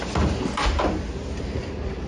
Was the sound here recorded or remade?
recorded